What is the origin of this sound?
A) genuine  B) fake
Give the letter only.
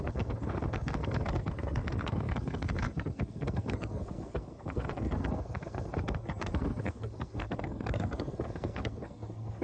B